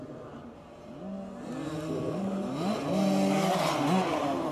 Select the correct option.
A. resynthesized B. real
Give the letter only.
B